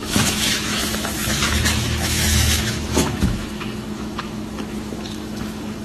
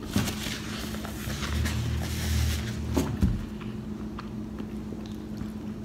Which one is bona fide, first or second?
second